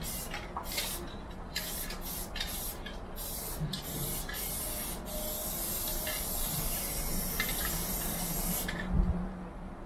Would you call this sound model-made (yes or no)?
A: no